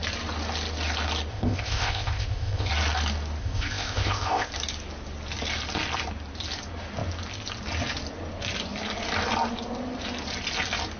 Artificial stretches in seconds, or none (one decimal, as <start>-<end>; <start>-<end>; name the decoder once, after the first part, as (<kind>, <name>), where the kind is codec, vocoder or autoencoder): 1.3-2.7 (codec, ZipCodec); 3.4-4.5